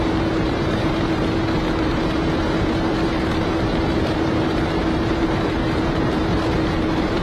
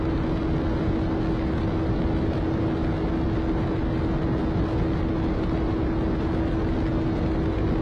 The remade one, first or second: first